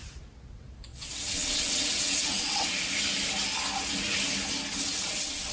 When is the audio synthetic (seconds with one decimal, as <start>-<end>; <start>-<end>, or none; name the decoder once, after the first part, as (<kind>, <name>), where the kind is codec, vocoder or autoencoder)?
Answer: 0.9-2.7 (vocoder, WaveNeXt); 4.7-5.5

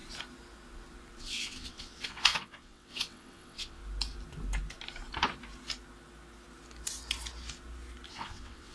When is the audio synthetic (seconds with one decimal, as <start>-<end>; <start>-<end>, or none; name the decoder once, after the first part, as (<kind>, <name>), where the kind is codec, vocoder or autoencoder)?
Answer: 1.2-3.8 (vocoder, WaveNeXt); 8.1-8.7

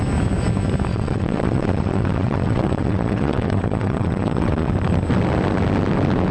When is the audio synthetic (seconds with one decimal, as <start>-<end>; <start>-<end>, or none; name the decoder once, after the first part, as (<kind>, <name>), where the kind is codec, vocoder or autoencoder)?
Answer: 0.9-4.7 (vocoder, WaveNeXt)